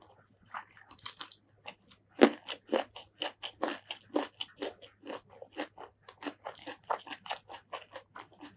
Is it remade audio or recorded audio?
recorded